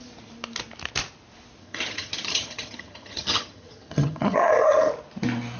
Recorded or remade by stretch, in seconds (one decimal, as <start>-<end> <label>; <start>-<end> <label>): 0.0-1.6 recorded; 1.6-4.9 remade; 4.9-5.6 recorded